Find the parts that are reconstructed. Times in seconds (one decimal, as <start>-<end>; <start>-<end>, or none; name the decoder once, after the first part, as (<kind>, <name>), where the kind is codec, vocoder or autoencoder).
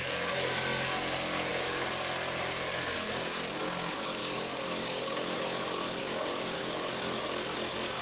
4.2-5.4 (codec, DAC); 6.0-6.9